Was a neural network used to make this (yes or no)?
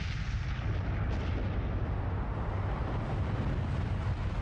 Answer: no